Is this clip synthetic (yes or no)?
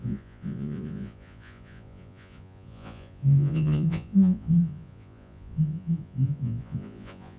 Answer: yes